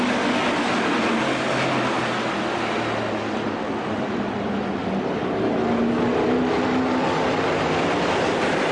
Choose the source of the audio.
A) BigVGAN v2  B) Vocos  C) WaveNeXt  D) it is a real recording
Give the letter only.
D